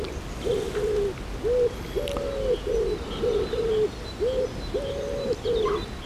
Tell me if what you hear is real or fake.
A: real